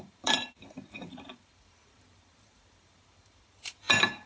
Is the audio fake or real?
fake